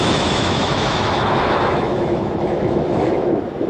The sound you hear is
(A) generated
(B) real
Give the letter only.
A